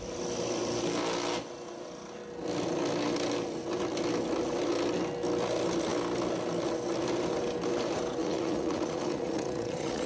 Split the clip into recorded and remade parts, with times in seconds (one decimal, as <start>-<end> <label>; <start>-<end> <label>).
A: 0.0-8.2 recorded; 8.2-10.1 remade